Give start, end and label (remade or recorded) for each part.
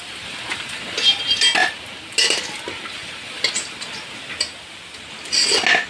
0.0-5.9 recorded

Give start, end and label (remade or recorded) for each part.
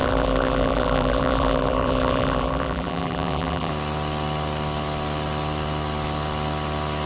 0.0-3.7 remade; 3.7-7.1 recorded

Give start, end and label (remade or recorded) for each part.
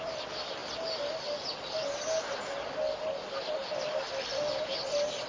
0.0-0.6 remade; 0.6-3.8 recorded; 3.8-4.3 remade; 4.3-4.8 recorded; 4.8-5.3 remade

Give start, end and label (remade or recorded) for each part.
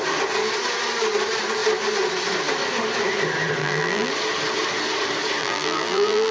0.0-3.6 recorded; 3.6-4.1 remade; 4.1-5.4 recorded; 5.4-6.3 remade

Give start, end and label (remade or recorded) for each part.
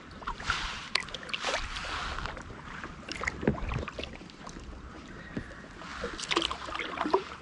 0.0-1.0 remade; 1.0-2.3 recorded; 2.3-5.9 remade; 5.9-6.9 recorded; 6.9-7.4 remade